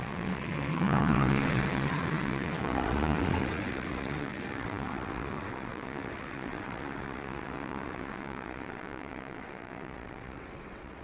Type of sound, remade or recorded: remade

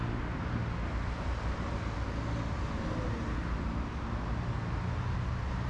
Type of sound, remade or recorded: recorded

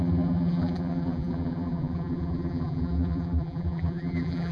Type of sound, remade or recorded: remade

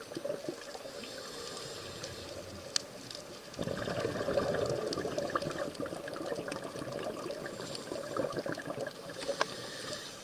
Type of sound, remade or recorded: recorded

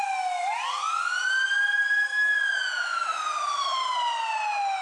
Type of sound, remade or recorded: recorded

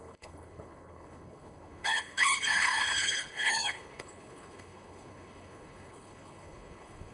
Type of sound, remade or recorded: remade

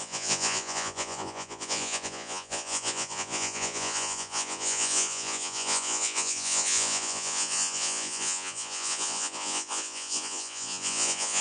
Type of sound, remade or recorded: remade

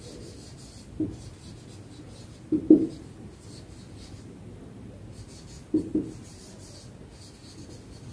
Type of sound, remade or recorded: recorded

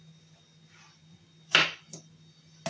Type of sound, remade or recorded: recorded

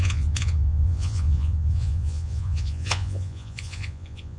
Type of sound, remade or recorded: remade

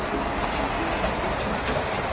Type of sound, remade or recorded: recorded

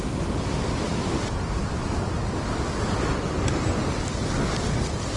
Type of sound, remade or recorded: recorded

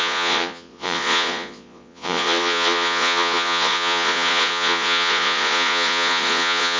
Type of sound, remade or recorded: remade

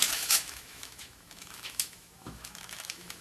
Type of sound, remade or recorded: remade